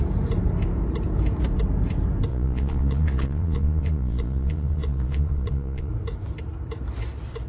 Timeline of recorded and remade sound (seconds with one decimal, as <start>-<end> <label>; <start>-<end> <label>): 0.0-2.3 recorded; 2.3-5.9 remade; 5.9-7.5 recorded